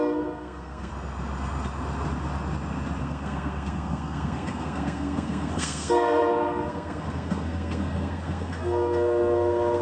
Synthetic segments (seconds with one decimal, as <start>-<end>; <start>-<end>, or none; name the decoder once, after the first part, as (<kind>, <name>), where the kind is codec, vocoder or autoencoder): 0.0-0.9 (codec, SNAC); 3.0-9.8